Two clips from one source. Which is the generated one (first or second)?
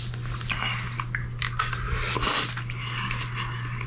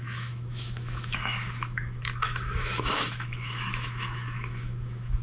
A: second